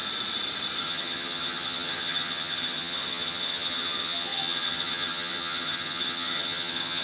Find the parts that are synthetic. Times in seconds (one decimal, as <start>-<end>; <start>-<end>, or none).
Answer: 0.8-7.0